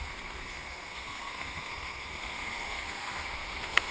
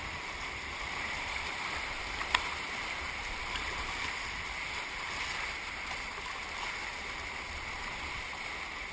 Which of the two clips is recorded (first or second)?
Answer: second